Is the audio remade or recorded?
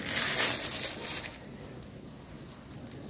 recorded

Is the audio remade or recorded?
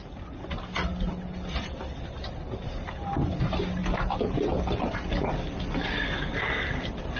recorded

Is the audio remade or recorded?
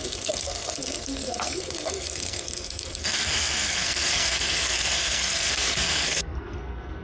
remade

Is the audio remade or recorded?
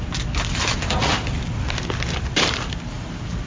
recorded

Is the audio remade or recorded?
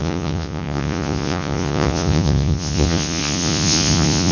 remade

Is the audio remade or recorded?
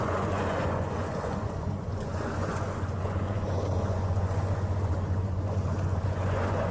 remade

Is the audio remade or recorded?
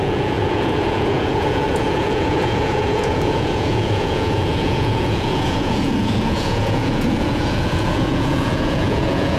remade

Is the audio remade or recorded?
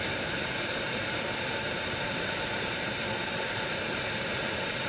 remade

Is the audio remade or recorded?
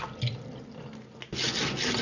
recorded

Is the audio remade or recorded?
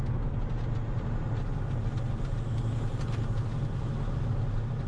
recorded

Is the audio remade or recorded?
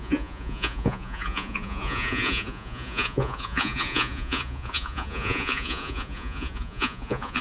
remade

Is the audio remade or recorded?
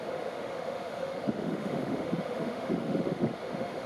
remade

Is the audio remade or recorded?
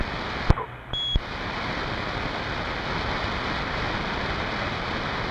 recorded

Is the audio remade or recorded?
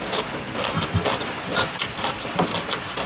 recorded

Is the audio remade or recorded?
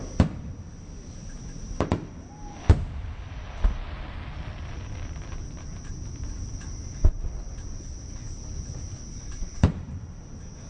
recorded